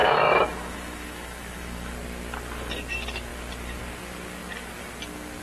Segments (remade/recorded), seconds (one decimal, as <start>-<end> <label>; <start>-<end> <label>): 0.0-1.9 remade; 1.9-5.4 recorded